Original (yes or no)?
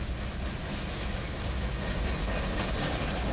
yes